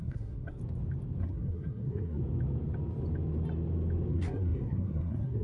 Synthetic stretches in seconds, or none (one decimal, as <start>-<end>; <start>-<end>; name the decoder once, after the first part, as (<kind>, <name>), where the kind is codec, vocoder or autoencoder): 0.0-0.6 (codec, SNAC); 1.2-2.2; 4.1-5.4